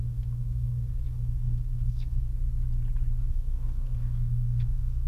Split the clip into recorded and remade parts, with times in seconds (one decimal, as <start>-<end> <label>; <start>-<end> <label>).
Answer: 0.0-2.3 remade; 2.3-3.3 recorded; 3.3-5.1 remade